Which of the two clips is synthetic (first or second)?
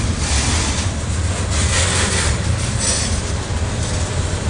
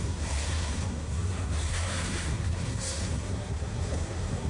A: second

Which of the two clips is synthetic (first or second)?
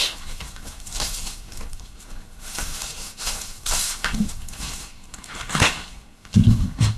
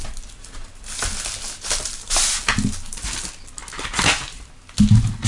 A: first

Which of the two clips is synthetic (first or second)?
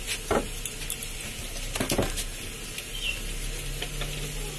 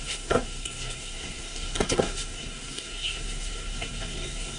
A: second